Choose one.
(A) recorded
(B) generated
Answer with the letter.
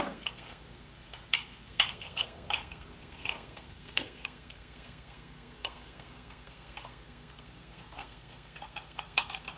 B